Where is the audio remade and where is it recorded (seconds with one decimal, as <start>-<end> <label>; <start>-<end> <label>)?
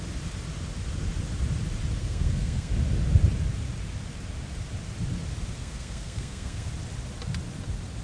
0.0-2.0 recorded; 2.0-2.7 remade; 2.7-5.6 recorded; 5.6-6.7 remade; 6.7-8.0 recorded